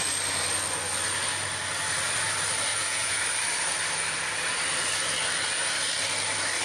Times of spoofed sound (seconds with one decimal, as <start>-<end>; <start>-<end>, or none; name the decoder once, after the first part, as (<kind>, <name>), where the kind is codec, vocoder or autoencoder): 2.7-3.2 (vocoder, Vocos)